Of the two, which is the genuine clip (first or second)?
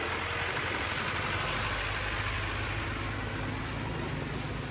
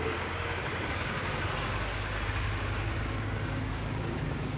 first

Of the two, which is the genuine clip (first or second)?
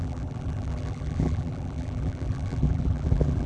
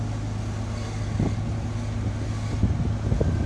second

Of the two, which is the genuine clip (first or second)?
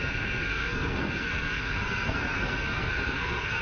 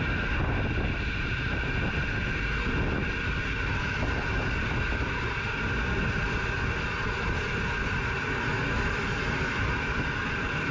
second